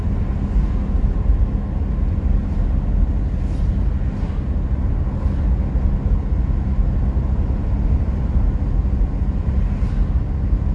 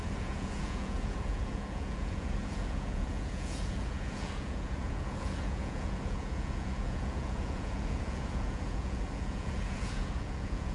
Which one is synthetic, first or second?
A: second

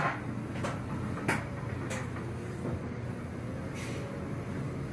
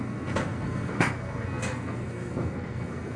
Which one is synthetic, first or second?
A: second